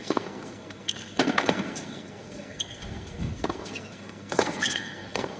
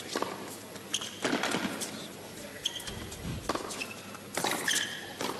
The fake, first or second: first